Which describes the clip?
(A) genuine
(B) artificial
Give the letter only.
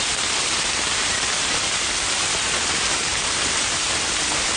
B